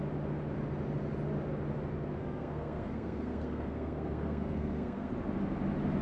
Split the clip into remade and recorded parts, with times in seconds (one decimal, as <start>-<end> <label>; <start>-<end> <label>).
0.0-2.2 recorded; 2.2-5.1 remade; 5.1-6.0 recorded